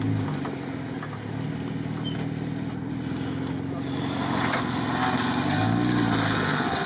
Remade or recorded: recorded